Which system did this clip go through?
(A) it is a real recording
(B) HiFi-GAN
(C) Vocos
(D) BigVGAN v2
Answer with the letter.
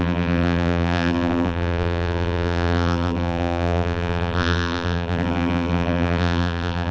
D